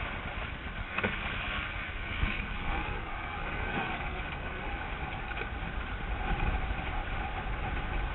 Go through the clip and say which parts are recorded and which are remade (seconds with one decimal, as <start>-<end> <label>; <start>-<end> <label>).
0.0-0.8 recorded; 0.8-4.8 remade; 4.8-8.1 recorded